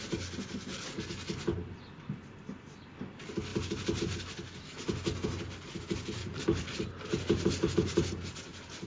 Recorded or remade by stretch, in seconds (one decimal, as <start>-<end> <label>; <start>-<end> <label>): 0.0-3.5 recorded; 3.5-4.0 remade; 4.0-6.2 recorded; 6.2-6.8 remade; 6.8-8.9 recorded